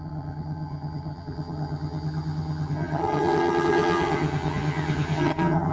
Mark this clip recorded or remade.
remade